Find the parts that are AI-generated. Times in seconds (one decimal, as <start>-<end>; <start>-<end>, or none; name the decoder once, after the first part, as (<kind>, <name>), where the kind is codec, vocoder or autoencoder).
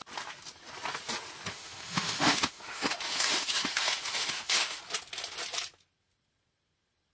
1.5-4.8 (autoencoder, DAC-VAE)